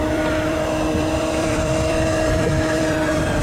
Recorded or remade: remade